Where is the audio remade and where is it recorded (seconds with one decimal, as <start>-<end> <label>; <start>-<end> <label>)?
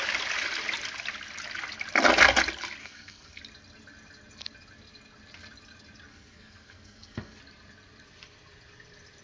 0.0-2.8 recorded; 2.8-3.4 remade; 3.4-6.1 recorded; 6.1-7.4 remade; 7.4-9.2 recorded